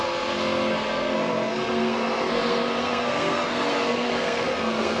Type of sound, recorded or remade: remade